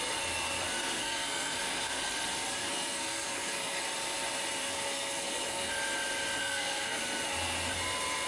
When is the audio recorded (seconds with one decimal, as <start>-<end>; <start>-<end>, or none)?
0.0-0.8; 2.0-2.6; 3.8-4.6; 5.7-6.4; 7.0-8.3